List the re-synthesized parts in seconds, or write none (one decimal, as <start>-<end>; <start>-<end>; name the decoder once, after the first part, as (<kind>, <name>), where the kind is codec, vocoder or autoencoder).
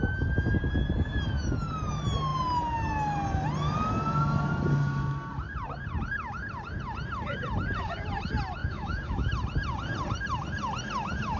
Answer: 8.6-9.3 (autoencoder, DAC-VAE)